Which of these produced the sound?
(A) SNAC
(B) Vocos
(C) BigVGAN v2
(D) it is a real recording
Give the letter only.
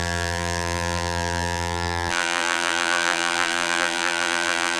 C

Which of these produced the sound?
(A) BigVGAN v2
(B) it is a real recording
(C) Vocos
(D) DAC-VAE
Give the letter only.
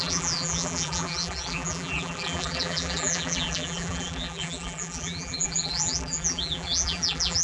A